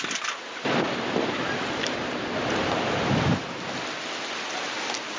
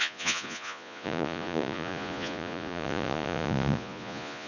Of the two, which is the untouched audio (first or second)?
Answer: first